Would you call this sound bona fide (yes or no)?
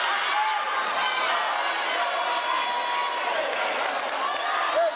yes